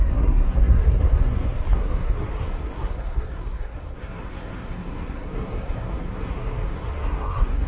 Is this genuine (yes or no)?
no